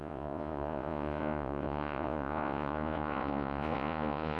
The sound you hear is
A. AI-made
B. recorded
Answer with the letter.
A